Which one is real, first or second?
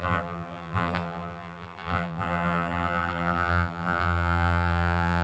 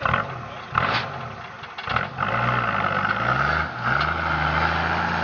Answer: second